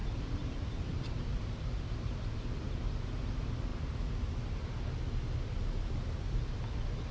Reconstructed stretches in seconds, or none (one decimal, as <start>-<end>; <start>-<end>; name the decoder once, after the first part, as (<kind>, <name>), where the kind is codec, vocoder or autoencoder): 0.0-2.7 (vocoder, BigVGAN v2)